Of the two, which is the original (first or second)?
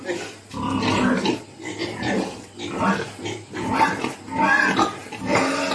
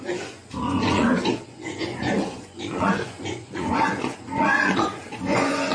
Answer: first